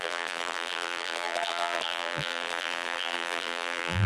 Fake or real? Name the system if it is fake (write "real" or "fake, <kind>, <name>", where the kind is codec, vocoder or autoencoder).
fake, vocoder, BigVGAN v2